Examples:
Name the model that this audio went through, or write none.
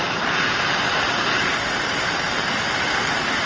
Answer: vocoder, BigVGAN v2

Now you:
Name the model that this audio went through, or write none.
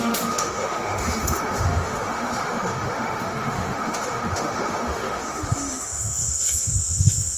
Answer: autoencoder, DAC-VAE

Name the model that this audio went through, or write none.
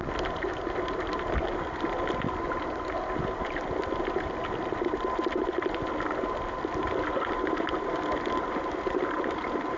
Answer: none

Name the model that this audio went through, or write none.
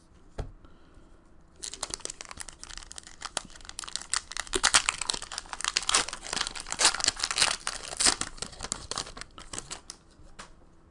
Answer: none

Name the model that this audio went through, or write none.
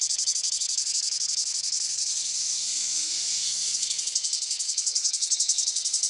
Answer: codec, SNAC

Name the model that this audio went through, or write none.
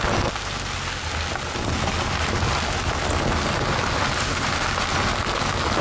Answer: none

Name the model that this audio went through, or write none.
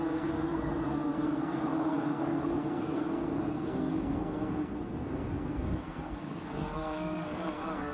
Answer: codec, SNAC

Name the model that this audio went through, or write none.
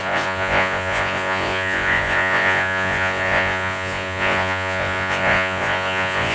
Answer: vocoder, Vocos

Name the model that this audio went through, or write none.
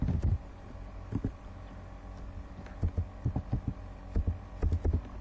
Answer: none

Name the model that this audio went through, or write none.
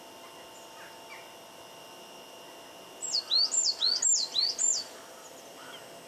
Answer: none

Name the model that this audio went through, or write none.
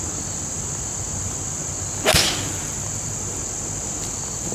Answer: none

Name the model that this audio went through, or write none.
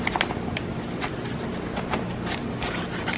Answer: none